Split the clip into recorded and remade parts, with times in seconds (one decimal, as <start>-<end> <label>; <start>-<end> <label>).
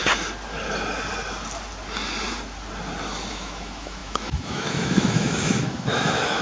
0.0-3.3 recorded; 3.3-6.4 remade